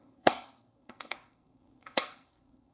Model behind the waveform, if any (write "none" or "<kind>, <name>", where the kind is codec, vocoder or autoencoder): codec, SNAC